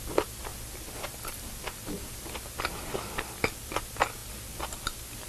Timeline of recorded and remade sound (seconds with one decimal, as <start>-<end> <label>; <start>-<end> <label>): 0.0-5.3 recorded